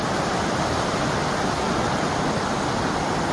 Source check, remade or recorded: recorded